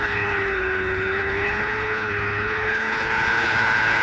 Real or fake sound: fake